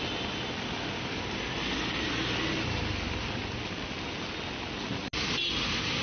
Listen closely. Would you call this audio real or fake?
real